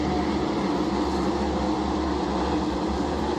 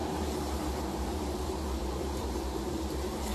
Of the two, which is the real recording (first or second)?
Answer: first